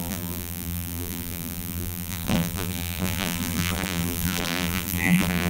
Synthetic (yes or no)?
yes